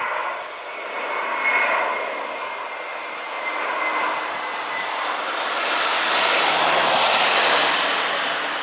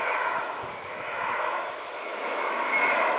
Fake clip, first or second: second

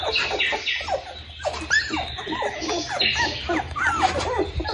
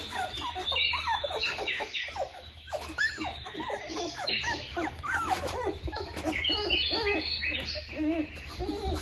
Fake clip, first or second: second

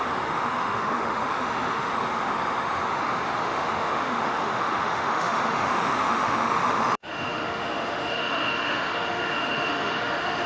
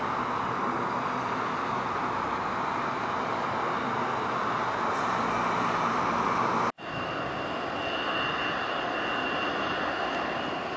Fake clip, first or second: first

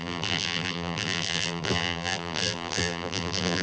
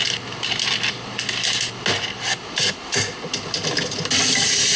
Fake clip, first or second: first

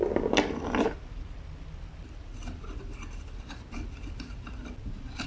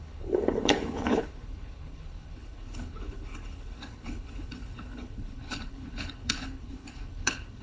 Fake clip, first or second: second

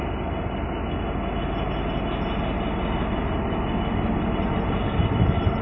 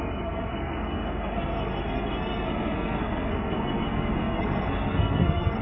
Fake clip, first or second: second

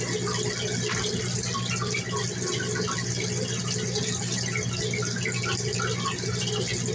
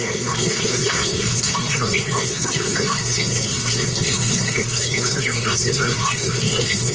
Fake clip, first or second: second